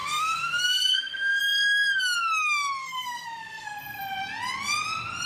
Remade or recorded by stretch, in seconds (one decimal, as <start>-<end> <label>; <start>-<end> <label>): 0.0-1.4 remade; 1.4-2.8 recorded; 2.8-4.0 remade; 4.0-5.3 recorded